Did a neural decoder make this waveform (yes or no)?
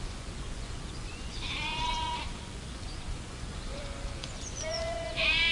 yes